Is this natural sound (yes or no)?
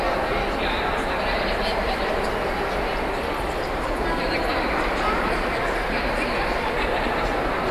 yes